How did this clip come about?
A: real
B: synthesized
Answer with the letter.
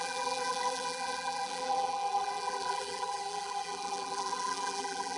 B